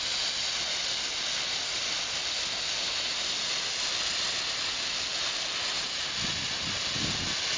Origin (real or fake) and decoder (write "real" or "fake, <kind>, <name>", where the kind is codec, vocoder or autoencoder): real